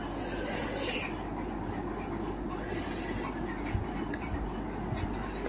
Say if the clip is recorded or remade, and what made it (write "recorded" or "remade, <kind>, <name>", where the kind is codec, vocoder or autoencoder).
recorded